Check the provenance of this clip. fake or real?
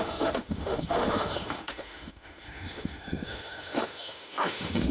fake